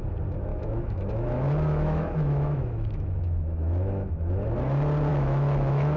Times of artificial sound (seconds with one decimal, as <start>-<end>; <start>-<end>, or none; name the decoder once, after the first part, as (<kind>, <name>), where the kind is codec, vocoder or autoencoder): 0.5-4.1 (autoencoder, DAC-VAE); 5.1-6.0